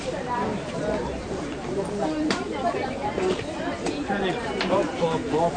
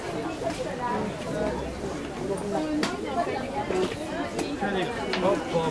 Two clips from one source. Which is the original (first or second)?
second